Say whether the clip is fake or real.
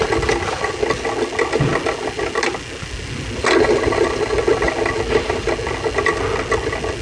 real